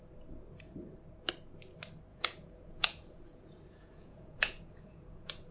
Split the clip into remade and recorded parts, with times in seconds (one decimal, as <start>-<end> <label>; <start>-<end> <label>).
0.0-2.1 recorded; 2.1-5.5 remade